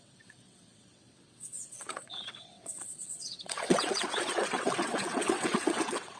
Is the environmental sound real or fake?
fake